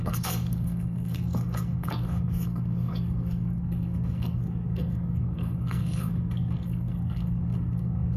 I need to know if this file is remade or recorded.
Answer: remade